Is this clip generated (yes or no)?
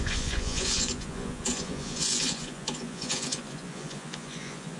yes